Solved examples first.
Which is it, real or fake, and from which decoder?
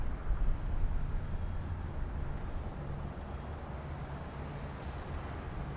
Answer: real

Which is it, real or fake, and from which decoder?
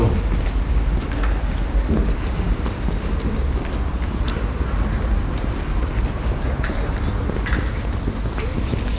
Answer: real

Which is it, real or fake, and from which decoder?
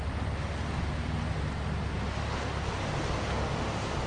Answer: real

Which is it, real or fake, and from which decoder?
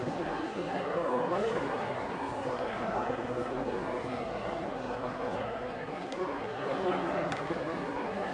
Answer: fake, codec, SNAC